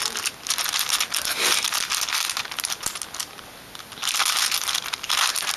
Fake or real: real